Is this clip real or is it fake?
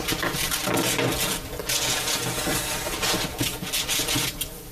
real